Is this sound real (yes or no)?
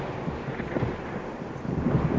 no